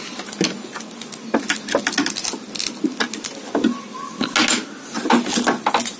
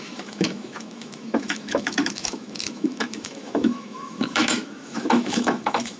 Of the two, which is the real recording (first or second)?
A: first